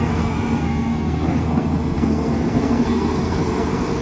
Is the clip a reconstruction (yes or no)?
yes